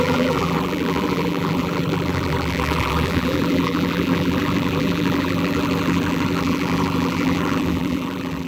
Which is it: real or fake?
fake